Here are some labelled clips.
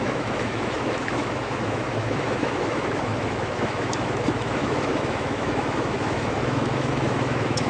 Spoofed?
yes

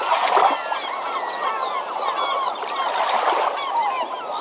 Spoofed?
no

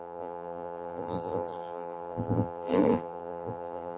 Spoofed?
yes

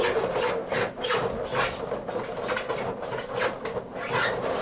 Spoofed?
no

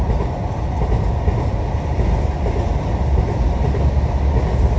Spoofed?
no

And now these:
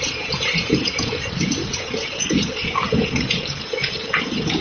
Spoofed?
yes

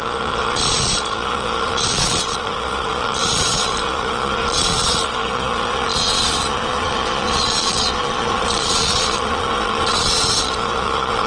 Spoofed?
yes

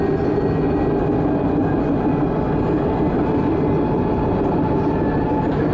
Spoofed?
no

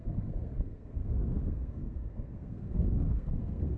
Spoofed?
yes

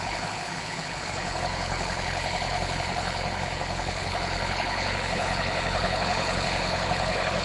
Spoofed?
yes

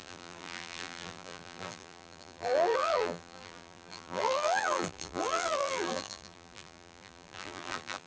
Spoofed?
yes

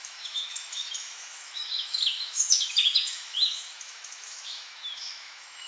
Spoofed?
yes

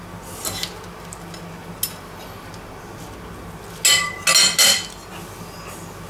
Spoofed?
no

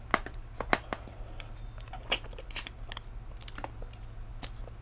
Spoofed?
no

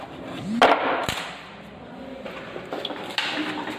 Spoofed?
no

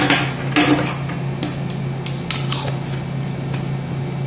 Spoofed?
no